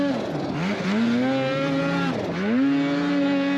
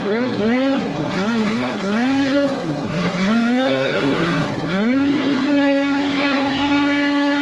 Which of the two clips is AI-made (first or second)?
second